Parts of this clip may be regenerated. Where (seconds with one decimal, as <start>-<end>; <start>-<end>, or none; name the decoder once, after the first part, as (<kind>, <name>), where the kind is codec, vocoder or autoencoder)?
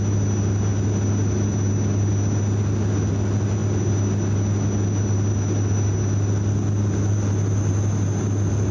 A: none